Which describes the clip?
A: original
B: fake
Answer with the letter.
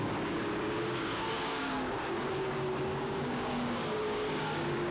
B